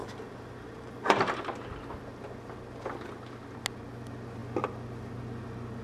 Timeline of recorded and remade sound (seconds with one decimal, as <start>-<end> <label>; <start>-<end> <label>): 0.0-1.4 remade; 1.4-5.8 recorded